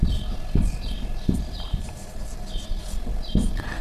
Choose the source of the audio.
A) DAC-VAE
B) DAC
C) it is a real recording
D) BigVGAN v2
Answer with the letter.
D